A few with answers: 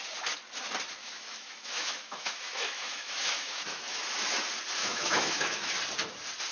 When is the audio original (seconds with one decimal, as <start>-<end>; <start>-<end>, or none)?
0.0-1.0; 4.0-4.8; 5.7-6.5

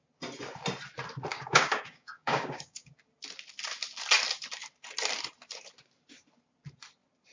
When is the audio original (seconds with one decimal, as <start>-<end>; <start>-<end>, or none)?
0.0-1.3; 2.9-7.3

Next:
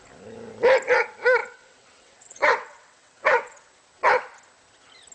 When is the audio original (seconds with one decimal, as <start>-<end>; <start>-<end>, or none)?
0.0-1.4; 3.6-5.1

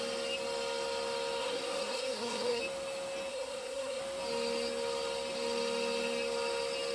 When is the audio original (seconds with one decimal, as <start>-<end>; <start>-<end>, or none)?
0.0-1.4; 2.6-3.3; 4.0-6.9

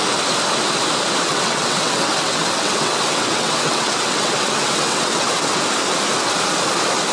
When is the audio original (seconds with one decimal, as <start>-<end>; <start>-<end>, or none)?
0.0-1.3; 5.6-7.1

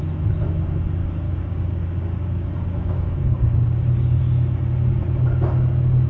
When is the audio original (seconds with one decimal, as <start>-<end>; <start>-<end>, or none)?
0.0-1.0; 4.2-6.1